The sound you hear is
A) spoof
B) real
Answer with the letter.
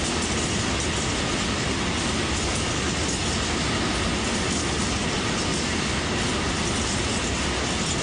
B